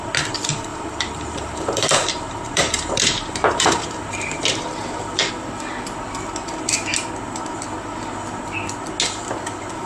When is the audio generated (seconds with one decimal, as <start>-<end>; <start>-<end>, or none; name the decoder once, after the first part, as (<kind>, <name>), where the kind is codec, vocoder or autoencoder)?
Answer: 0.7-5.3 (vocoder, BigVGAN v2)

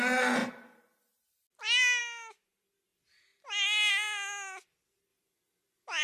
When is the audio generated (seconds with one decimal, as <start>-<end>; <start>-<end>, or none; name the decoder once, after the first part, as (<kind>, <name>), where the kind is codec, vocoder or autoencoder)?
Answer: 0.4-1.0 (vocoder, BigVGAN v2)

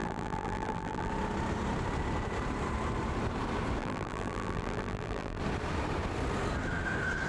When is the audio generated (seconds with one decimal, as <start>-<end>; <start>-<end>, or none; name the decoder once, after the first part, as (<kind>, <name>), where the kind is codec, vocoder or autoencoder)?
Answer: 0.0-1.1 (vocoder, BigVGAN v2); 3.8-5.4